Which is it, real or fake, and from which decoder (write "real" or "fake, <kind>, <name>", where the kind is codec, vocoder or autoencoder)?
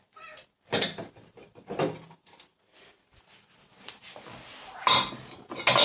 real